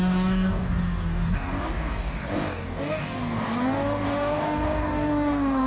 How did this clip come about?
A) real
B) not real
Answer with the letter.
B